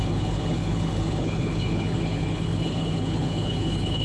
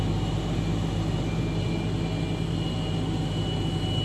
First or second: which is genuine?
second